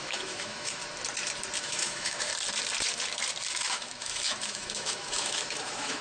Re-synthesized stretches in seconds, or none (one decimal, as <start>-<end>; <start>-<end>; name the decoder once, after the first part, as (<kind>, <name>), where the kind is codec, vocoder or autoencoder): 0.0-0.8 (autoencoder, DAC-VAE); 1.6-2.3; 3.5-6.0

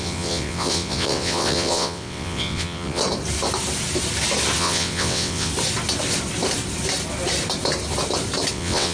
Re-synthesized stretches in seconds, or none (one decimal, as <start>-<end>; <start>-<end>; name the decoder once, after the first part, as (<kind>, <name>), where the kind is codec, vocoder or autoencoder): 0.0-3.0 (vocoder, WaveNeXt); 4.6-5.5; 8.5-8.9